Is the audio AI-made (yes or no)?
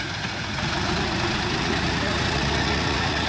yes